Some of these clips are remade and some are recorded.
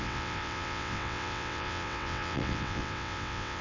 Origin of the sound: remade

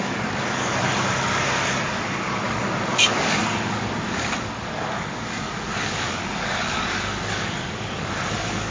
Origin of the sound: remade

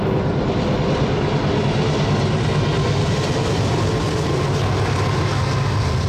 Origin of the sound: recorded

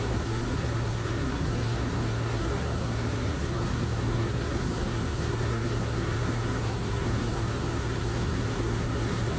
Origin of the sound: remade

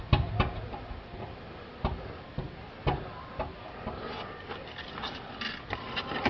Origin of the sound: recorded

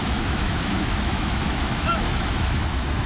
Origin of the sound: remade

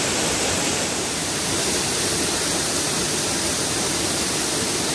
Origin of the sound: recorded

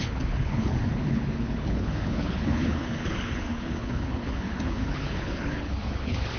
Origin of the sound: remade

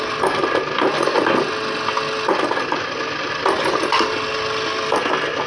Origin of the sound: recorded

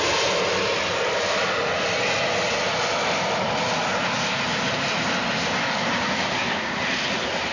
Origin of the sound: recorded